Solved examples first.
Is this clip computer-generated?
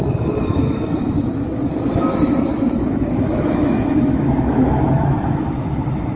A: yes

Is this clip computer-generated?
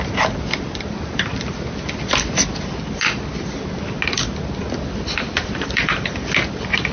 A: no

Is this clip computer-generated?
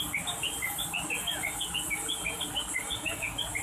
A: no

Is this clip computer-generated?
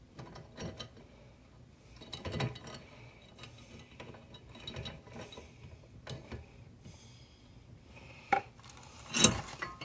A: no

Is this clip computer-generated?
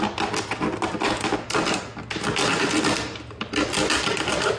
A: no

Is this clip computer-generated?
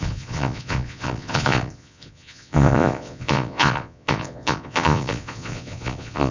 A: yes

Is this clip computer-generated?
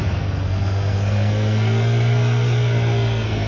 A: yes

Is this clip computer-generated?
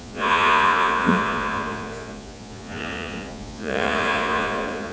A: yes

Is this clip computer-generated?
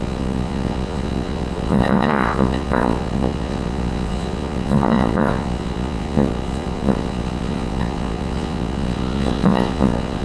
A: yes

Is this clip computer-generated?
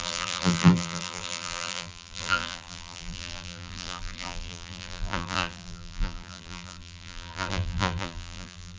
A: yes